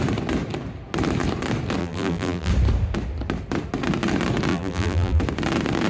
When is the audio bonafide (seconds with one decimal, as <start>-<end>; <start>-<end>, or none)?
0.0-1.8; 2.5-4.5; 5.2-5.9